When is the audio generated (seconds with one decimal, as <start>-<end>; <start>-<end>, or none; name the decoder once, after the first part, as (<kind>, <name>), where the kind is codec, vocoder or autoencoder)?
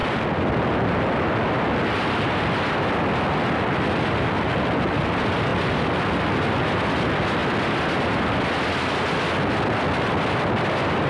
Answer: none